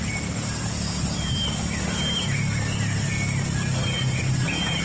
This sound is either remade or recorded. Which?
recorded